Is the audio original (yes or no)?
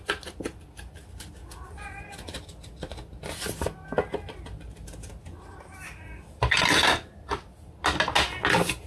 yes